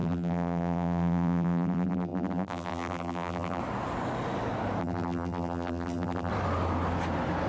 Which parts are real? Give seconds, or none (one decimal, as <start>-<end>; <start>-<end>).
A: 3.6-4.8; 6.3-7.5